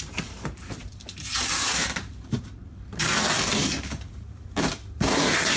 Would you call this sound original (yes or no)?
no